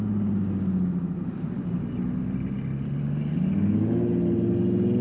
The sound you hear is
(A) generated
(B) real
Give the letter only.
B